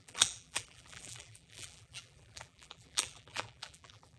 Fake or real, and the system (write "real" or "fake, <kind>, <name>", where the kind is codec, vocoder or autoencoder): fake, vocoder, BigVGAN v2